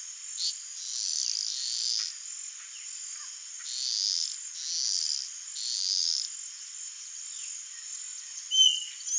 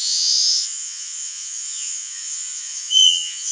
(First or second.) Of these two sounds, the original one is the first